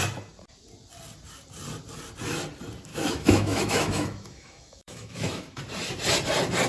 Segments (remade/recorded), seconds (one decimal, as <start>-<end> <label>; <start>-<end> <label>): 0.0-2.9 recorded; 2.9-5.6 remade; 5.6-6.7 recorded